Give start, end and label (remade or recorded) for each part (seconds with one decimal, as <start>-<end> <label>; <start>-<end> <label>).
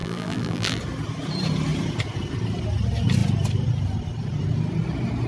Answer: 0.0-0.8 remade; 0.8-5.3 recorded